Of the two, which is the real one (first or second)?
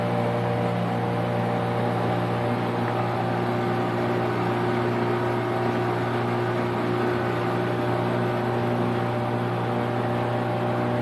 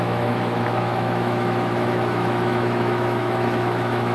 first